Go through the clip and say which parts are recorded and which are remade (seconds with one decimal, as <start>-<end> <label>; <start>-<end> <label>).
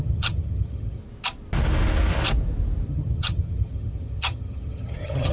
0.0-1.0 remade; 1.0-2.9 recorded; 2.9-5.3 remade